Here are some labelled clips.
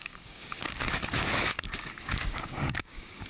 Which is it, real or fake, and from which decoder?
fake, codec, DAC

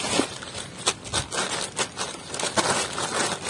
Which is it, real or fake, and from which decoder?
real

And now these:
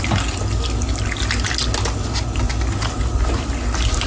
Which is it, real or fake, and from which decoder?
real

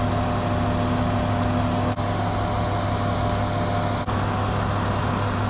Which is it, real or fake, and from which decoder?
real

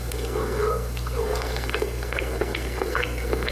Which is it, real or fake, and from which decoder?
fake, codec, SNAC